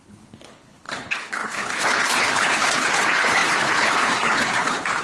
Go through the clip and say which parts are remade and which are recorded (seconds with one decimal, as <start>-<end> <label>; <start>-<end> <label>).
0.0-5.0 remade